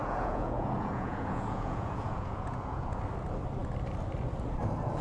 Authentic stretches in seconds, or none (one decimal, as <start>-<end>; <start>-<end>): 3.0-5.0